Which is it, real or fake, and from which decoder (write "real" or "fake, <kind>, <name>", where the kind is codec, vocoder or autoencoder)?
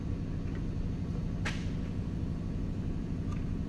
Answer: real